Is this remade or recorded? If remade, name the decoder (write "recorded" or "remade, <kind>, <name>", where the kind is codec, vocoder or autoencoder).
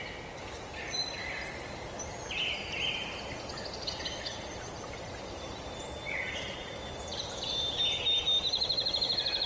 recorded